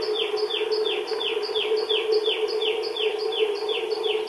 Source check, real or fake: real